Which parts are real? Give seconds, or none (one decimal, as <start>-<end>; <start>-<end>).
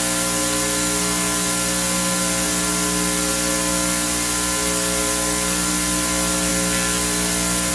0.0-7.7